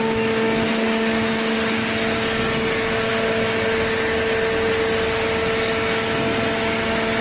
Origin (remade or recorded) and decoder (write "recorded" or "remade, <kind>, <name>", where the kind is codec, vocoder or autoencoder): recorded